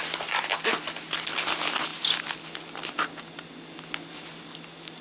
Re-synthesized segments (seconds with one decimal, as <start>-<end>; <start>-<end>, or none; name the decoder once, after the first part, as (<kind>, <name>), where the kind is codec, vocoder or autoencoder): none